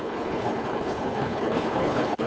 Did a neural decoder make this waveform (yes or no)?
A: yes